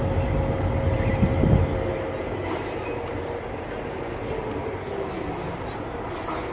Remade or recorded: recorded